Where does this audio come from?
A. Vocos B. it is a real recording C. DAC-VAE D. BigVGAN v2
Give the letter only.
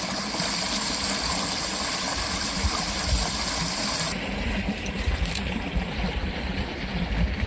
B